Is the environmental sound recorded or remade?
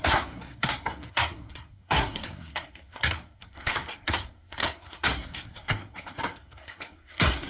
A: remade